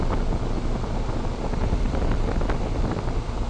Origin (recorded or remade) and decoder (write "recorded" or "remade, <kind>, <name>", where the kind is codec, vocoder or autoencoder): remade, vocoder, BigVGAN v2